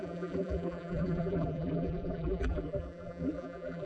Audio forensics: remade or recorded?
remade